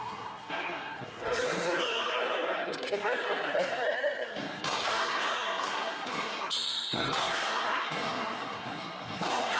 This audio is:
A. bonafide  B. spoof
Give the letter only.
B